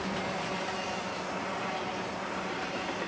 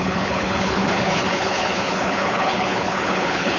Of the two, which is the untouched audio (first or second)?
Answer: first